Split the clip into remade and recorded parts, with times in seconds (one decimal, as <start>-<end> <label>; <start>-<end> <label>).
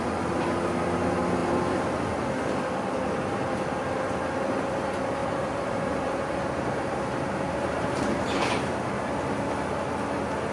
0.0-1.4 recorded; 1.4-2.1 remade; 2.1-5.2 recorded; 5.2-8.9 remade; 8.9-10.5 recorded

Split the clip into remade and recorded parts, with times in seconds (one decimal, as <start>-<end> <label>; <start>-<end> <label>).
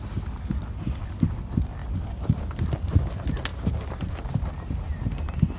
0.0-1.8 recorded; 1.8-2.4 remade; 2.4-3.5 recorded; 3.5-4.1 remade; 4.1-5.6 recorded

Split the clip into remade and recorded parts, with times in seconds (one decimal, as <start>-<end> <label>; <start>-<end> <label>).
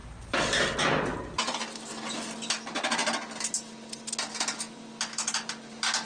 0.0-6.1 recorded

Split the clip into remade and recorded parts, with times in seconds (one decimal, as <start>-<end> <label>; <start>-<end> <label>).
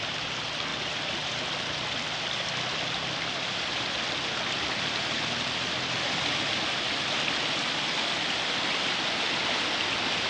0.0-10.3 recorded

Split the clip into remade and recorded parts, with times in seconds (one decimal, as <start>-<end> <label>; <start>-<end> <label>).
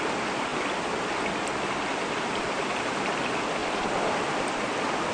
0.0-1.9 recorded; 1.9-3.1 remade; 3.1-3.6 recorded; 3.6-4.6 remade; 4.6-5.1 recorded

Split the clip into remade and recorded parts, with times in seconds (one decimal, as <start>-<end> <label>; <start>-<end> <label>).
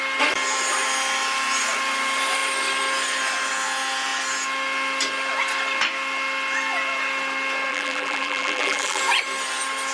0.0-7.7 recorded; 7.7-9.0 remade; 9.0-9.9 recorded